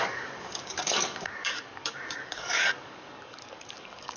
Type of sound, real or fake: fake